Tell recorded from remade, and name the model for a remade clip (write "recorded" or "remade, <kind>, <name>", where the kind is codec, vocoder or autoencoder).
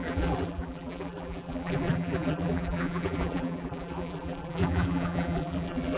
remade, vocoder, BigVGAN v2